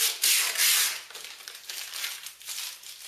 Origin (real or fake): real